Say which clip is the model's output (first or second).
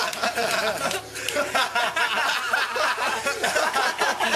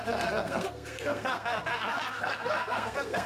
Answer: second